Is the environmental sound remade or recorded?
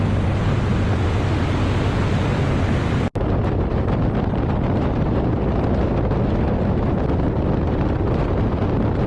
recorded